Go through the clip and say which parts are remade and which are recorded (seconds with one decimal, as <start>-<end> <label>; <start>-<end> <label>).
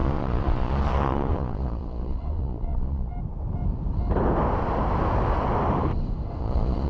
0.0-3.1 remade; 3.1-6.4 recorded; 6.4-6.9 remade